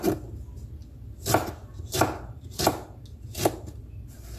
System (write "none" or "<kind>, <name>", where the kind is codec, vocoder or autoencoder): none